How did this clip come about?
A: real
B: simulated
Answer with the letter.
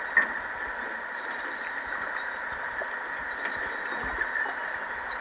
A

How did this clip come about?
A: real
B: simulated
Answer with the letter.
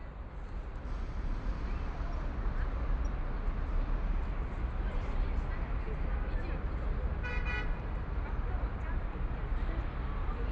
A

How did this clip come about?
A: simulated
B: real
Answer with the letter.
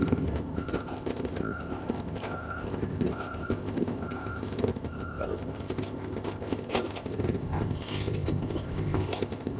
A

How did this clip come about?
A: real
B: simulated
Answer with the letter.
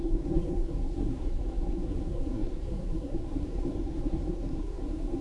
B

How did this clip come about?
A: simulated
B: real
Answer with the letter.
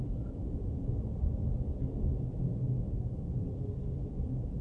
B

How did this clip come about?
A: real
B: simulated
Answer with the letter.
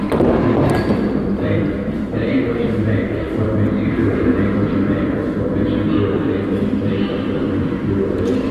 B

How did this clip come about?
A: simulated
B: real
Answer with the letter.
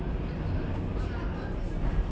B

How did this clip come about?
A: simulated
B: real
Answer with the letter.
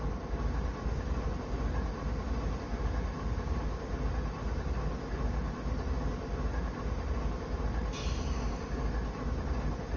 B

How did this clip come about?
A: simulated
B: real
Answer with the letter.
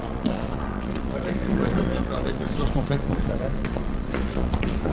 A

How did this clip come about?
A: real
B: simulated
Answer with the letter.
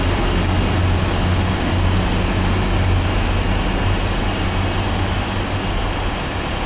A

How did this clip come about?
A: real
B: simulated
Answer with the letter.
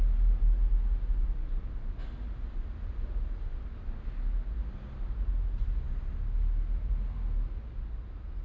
A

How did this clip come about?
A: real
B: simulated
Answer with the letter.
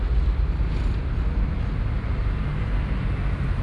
A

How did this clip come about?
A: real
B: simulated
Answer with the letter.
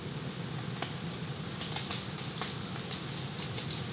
A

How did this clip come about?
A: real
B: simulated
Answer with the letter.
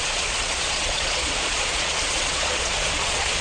B